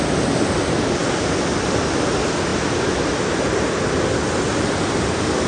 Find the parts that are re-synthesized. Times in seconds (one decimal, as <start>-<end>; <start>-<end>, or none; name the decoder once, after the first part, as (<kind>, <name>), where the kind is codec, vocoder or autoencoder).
none